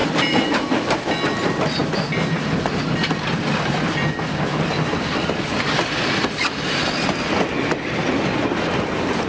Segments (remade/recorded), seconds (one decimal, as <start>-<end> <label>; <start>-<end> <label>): 0.0-1.1 remade; 1.1-9.3 recorded